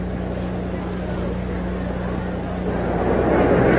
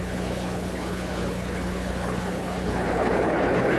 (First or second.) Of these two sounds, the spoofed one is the second